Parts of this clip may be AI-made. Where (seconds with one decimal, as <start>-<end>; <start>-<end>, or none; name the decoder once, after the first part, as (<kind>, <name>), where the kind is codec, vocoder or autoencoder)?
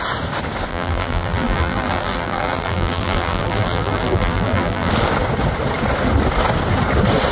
0.7-4.9 (vocoder, BigVGAN v2)